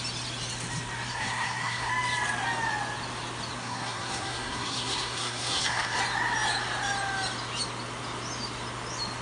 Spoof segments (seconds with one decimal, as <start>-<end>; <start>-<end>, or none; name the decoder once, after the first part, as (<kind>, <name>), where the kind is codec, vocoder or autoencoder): 1.1-1.9 (codec, SNAC); 3.6-6.0

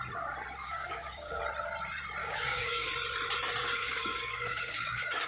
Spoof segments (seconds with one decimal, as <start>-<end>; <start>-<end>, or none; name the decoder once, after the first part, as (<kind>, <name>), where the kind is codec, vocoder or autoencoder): 0.6-1.4 (codec, DAC); 2.2-2.9; 3.6-5.3

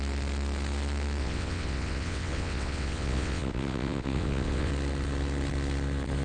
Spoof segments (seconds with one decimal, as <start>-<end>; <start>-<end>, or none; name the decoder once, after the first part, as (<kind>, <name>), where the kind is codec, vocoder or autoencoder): 1.2-4.7 (vocoder, WaveNeXt)

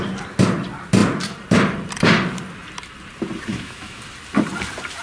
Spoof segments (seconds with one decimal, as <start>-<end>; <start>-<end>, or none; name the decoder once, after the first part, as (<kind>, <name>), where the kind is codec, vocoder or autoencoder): 3.5-4.0 (autoencoder, DAC-VAE)

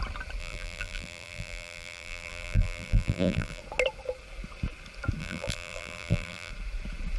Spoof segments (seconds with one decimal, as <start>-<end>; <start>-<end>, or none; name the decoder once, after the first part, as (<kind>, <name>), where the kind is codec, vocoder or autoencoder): 0.4-3.6 (vocoder, BigVGAN v2); 5.2-6.5

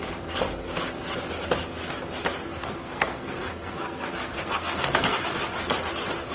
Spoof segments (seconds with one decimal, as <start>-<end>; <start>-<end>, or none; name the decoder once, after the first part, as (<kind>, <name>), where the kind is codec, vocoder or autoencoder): 2.5-5.2 (codec, SNAC)

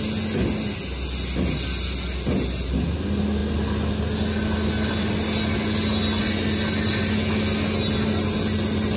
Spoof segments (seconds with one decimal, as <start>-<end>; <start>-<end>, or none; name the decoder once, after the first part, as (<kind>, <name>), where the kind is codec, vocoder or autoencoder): none

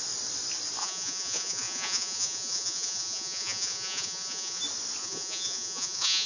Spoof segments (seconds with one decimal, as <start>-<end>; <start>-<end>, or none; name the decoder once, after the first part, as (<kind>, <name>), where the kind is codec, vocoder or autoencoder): 0.8-4.6 (vocoder, Vocos); 5.0-6.3